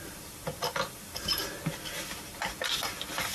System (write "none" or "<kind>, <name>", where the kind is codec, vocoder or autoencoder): none